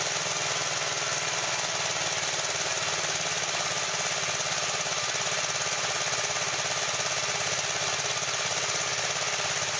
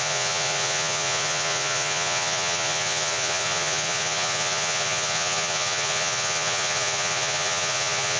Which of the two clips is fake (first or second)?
second